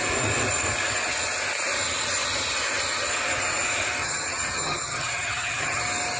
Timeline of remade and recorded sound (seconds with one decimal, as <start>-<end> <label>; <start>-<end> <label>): 0.0-4.0 recorded; 4.0-5.8 remade; 5.8-6.2 recorded